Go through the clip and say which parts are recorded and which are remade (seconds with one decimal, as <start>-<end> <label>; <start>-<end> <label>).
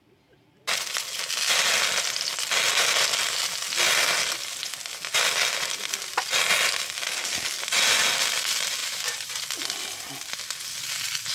0.0-8.8 recorded; 8.8-9.4 remade; 9.4-11.3 recorded